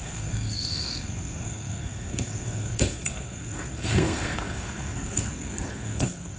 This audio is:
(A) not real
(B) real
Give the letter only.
A